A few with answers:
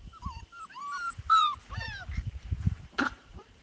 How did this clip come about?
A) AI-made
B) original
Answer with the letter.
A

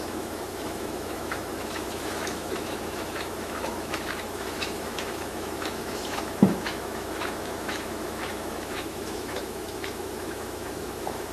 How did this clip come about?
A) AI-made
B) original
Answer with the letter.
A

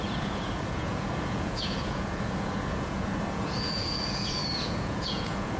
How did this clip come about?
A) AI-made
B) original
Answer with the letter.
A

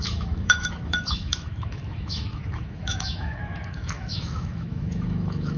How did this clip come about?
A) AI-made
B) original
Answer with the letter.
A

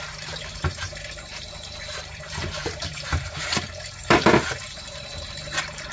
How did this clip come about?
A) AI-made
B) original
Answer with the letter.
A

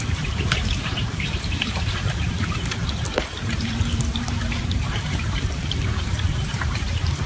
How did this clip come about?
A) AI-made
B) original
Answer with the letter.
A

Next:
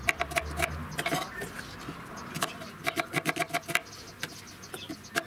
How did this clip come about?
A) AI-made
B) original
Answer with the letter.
B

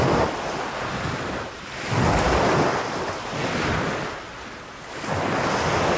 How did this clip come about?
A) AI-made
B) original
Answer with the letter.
B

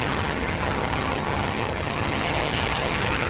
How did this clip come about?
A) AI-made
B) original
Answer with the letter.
A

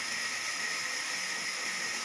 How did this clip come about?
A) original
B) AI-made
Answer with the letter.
A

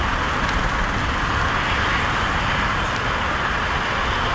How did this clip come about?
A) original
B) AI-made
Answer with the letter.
A